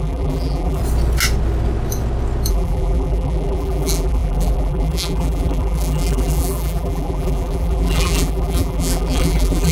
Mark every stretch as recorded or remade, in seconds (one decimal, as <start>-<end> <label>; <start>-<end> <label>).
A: 0.0-0.8 remade; 0.8-2.5 recorded; 2.5-9.7 remade